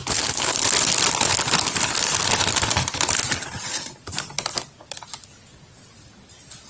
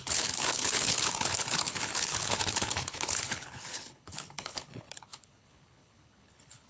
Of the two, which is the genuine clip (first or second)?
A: first